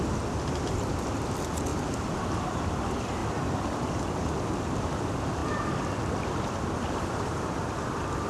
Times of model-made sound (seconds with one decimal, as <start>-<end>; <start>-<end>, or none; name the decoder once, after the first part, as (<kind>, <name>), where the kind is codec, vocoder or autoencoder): 1.7-2.7 (vocoder, BigVGAN v2); 3.2-4.2; 5.4-8.3